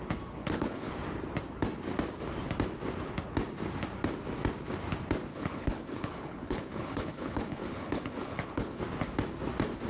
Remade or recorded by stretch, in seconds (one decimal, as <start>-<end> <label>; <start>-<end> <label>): 0.0-0.4 recorded; 0.4-0.9 remade; 0.9-5.3 recorded; 5.3-8.8 remade; 8.8-9.9 recorded